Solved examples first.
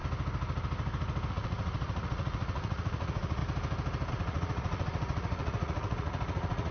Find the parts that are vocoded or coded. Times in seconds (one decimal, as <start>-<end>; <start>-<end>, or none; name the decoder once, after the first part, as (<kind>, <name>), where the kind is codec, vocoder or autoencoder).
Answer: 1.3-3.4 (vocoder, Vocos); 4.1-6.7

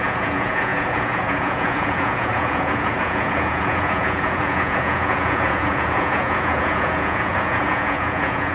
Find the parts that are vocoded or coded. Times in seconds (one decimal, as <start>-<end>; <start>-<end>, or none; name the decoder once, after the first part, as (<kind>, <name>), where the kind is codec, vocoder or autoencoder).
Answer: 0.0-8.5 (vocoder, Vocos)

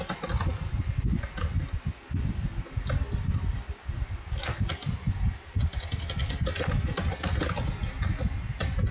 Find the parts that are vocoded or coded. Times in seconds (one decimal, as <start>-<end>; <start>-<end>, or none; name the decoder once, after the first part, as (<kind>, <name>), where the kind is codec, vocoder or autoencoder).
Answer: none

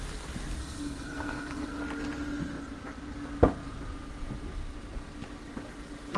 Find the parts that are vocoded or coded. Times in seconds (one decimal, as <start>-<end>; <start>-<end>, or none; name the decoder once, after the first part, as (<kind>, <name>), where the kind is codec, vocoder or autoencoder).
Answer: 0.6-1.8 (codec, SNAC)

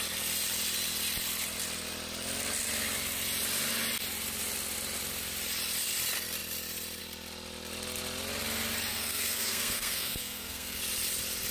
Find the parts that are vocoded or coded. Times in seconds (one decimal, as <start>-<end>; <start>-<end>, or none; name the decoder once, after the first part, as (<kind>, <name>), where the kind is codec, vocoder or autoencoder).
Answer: 8.9-10.8 (codec, SNAC)

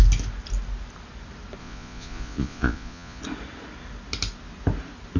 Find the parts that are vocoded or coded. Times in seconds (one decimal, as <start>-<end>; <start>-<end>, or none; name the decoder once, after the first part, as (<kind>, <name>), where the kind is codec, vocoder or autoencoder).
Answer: 1.6-3.2 (vocoder, Vocos)

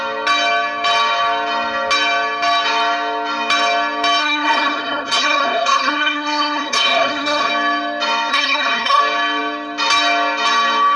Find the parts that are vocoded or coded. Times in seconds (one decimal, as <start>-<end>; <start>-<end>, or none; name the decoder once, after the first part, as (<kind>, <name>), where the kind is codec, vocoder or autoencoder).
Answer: 4.2-7.5 (codec, SNAC); 8.3-9.0

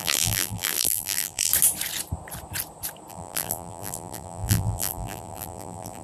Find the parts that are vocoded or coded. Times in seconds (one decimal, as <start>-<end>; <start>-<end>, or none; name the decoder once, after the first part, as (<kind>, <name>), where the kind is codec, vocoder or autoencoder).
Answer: 0.0-1.5 (vocoder, BigVGAN v2); 3.1-6.0